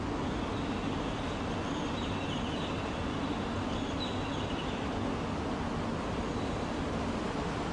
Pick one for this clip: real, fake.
real